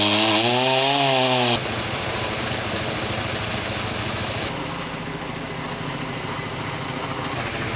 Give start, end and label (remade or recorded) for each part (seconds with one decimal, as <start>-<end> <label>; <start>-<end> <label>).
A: 0.0-1.6 recorded; 1.6-5.0 remade; 5.0-7.8 recorded

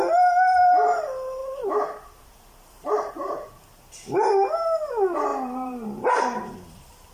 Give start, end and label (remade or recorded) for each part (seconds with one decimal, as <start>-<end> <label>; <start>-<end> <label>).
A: 0.0-1.4 recorded; 1.4-3.1 remade; 3.1-5.3 recorded; 5.3-6.2 remade; 6.2-7.1 recorded